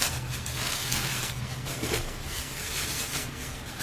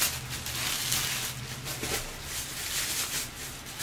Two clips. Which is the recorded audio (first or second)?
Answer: second